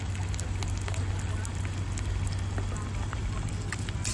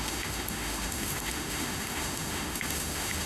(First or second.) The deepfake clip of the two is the second